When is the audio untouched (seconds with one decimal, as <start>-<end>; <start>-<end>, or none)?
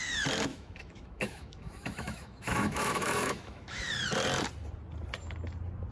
0.0-0.5; 3.8-5.9